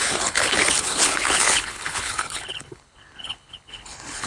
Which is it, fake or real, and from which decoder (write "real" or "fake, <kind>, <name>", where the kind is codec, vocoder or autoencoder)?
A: fake, codec, HILCodec